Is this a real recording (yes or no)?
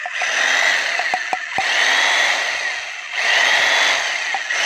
yes